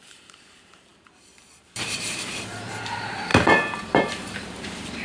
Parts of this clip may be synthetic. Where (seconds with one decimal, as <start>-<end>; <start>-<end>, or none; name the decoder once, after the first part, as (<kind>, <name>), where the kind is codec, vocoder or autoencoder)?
0.0-5.0 (vocoder, BigVGAN v2)